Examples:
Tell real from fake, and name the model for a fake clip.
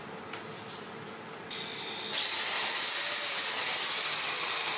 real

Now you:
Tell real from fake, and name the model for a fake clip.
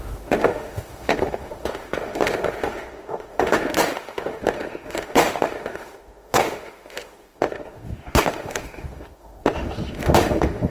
fake, autoencoder, DAC-VAE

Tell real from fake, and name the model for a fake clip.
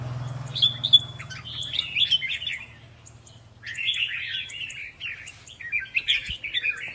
real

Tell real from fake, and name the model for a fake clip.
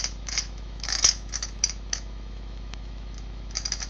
fake, autoencoder, DAC-VAE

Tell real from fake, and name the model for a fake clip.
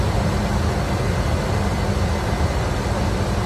real